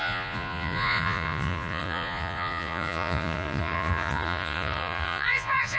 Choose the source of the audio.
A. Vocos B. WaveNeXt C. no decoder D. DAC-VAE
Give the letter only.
A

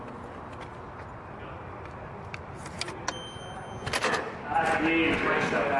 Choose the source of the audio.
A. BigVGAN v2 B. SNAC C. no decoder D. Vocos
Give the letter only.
C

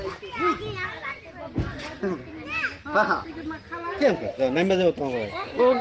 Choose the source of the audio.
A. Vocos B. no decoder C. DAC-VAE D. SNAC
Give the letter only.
B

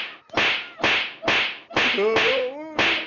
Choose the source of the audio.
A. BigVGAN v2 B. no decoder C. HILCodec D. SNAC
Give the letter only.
B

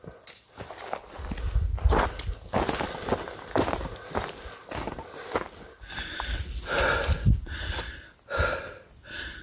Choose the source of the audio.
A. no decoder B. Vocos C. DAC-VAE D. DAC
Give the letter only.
A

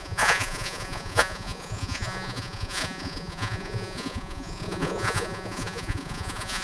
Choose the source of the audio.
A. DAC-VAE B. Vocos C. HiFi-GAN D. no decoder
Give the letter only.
B